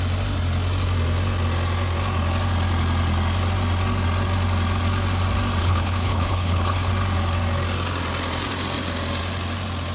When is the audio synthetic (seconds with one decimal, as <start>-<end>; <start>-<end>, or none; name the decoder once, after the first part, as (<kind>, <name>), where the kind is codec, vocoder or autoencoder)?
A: 5.6-6.9 (codec, HILCodec)